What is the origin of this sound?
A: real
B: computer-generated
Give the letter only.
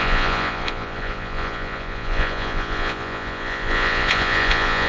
B